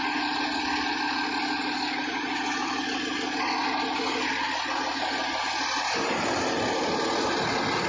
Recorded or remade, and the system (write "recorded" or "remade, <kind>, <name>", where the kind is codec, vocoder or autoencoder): recorded